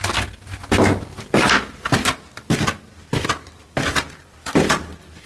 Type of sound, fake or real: fake